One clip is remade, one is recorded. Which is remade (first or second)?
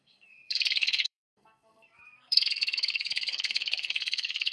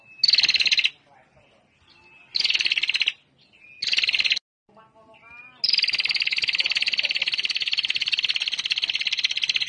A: first